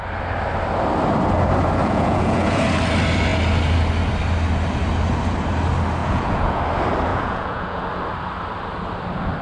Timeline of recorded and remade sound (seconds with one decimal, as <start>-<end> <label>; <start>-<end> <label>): 0.0-1.8 recorded; 1.8-2.6 remade; 2.6-6.0 recorded; 6.0-6.6 remade; 6.6-7.1 recorded; 7.1-7.8 remade; 7.8-9.4 recorded